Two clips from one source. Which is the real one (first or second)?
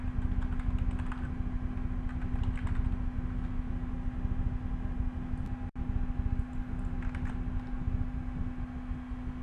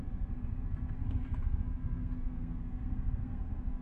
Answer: first